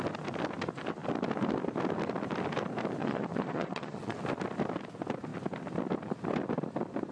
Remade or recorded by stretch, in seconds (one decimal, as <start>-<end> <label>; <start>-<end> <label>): 0.0-3.0 recorded; 3.0-4.2 remade; 4.2-7.1 recorded